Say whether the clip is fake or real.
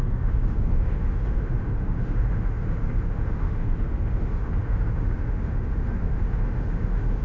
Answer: fake